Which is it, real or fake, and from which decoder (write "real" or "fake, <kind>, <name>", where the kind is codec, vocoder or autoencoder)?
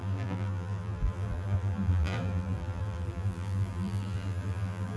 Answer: fake, vocoder, BigVGAN v2